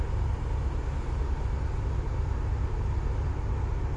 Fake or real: real